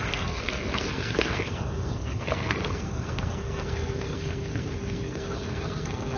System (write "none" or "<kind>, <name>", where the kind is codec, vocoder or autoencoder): codec, SNAC